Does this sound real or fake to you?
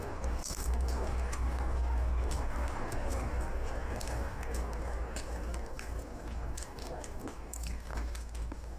fake